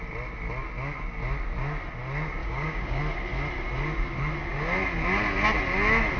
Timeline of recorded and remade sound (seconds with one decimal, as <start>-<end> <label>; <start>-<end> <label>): 0.0-2.4 recorded; 2.4-3.0 remade; 3.0-6.2 recorded